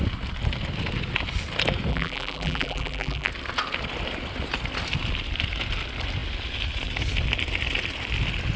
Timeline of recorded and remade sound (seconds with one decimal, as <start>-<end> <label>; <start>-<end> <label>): 0.0-1.9 recorded; 1.9-3.3 remade; 3.3-8.6 recorded